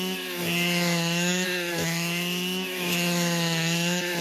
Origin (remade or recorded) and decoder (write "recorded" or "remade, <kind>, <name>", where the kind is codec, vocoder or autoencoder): remade, autoencoder, DAC-VAE